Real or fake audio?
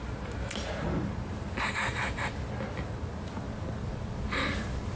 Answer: real